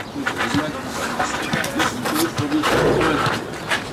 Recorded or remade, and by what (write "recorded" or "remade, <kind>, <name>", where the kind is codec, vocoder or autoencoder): recorded